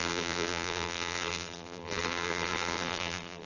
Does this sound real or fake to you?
fake